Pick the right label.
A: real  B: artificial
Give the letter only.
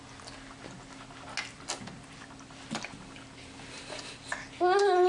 A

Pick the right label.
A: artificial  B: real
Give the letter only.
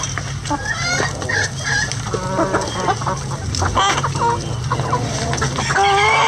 B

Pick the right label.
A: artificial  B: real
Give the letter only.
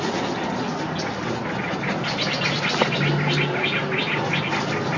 B